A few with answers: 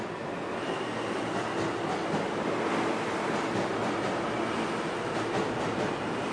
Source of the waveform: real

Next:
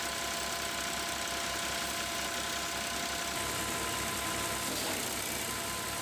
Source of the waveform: real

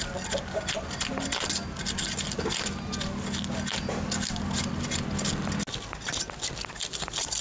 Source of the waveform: real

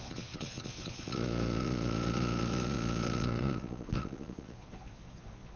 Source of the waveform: fake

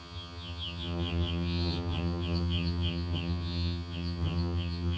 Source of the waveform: fake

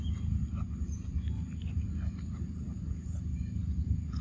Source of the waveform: real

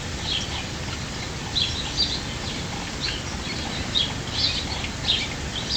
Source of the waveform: real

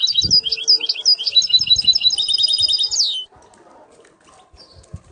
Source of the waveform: real